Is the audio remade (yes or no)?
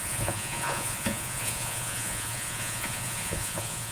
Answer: yes